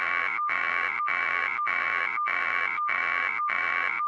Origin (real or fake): fake